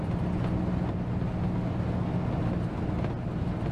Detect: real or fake real